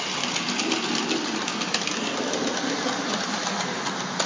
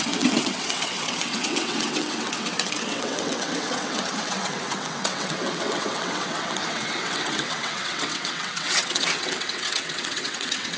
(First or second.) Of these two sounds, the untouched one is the first